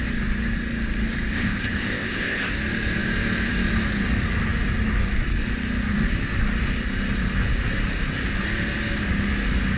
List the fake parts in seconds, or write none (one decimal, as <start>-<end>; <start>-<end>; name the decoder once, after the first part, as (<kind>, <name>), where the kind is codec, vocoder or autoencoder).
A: 1.3-2.5 (codec, ZipCodec)